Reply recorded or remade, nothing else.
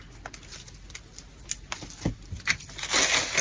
recorded